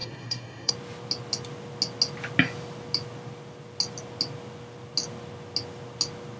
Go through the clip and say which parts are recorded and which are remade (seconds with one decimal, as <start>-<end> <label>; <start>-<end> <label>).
0.0-0.7 remade; 0.7-6.4 recorded